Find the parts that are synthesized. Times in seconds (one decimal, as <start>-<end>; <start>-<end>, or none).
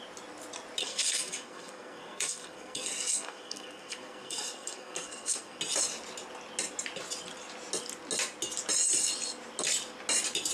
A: 0.8-5.6